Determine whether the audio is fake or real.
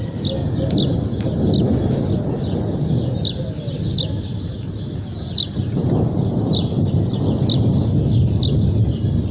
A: real